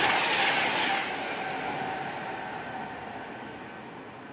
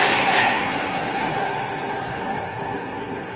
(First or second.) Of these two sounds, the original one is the first